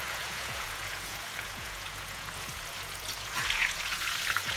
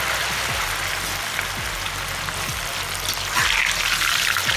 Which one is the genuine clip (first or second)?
second